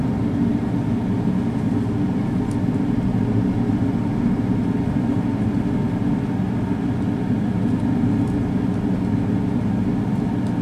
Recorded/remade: recorded